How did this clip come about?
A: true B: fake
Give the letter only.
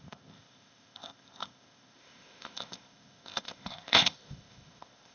B